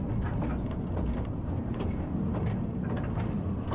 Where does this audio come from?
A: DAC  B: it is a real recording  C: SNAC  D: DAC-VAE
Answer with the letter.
B